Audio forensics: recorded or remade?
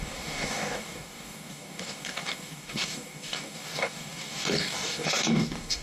remade